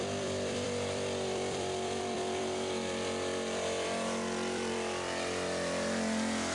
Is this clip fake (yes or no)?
yes